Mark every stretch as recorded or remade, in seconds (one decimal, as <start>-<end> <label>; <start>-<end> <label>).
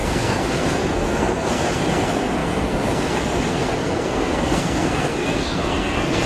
0.0-6.3 remade